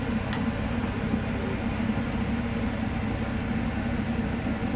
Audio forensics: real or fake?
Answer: real